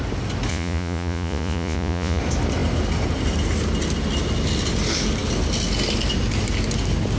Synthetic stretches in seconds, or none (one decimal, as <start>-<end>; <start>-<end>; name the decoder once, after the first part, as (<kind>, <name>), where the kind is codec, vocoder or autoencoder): 0.5-2.2 (vocoder, Vocos)